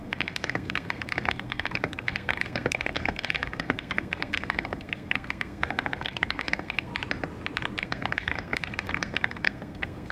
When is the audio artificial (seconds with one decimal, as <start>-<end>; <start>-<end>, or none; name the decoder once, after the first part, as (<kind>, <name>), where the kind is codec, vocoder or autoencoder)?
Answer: 0.0-6.9 (codec, SNAC); 7.8-10.1